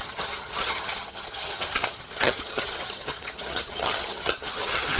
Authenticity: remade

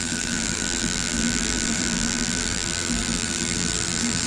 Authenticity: remade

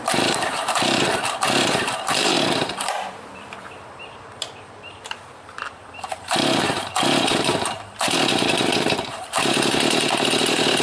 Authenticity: remade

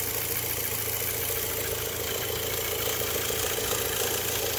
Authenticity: recorded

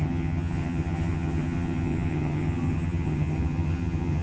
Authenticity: remade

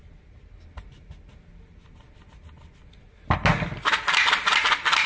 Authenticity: recorded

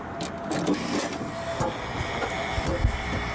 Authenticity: recorded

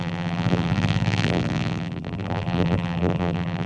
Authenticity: remade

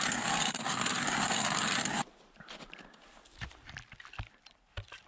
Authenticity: remade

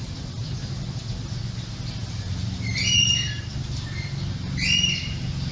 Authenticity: recorded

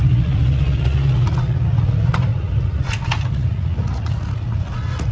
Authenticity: remade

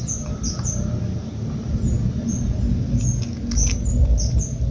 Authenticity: recorded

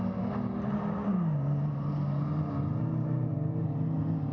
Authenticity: recorded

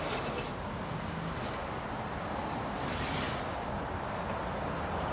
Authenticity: recorded